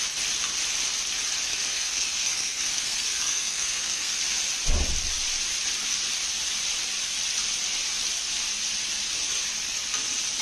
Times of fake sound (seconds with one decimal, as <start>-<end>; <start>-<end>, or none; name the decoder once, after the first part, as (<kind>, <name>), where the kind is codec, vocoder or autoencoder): 1.5-4.2 (codec, SNAC)